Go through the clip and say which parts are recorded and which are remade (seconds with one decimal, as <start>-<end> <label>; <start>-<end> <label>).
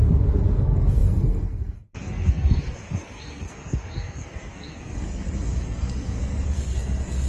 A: 0.0-7.3 remade